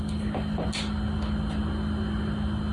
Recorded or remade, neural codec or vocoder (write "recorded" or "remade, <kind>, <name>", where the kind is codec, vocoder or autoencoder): recorded